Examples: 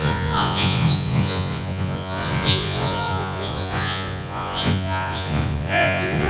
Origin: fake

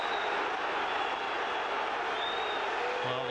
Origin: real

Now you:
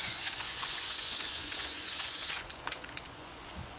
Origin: fake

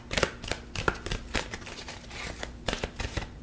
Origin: real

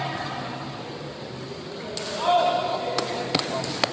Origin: real